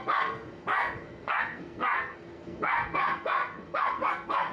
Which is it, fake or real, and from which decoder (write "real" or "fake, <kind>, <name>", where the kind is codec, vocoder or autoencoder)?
fake, codec, SNAC